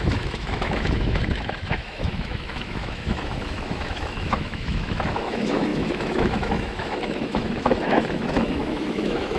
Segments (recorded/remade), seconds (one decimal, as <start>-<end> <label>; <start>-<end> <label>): 0.0-9.4 remade